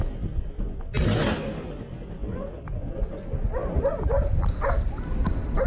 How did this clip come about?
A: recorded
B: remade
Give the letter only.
A